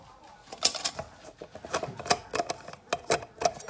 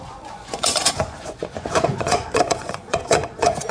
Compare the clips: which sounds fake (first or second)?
second